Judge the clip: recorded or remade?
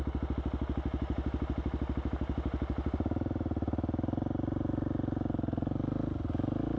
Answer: recorded